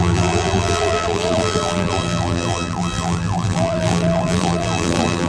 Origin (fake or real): fake